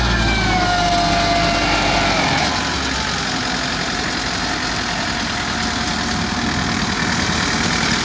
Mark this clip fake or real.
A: real